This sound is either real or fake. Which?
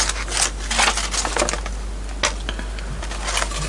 real